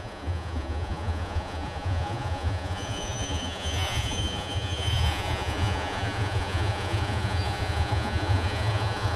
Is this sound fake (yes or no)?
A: yes